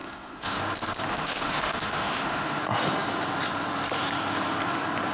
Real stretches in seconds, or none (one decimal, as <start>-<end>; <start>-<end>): 0.6-1.1; 2.6-5.1